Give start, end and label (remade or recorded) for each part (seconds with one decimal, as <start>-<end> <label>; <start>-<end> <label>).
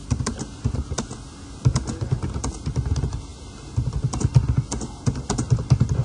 0.0-6.0 recorded